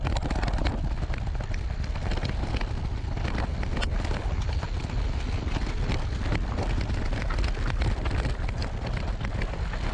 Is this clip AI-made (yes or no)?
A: no